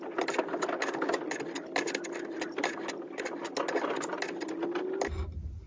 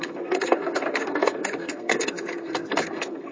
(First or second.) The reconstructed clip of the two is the second